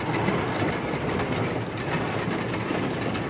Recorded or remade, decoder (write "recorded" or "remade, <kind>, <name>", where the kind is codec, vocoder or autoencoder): recorded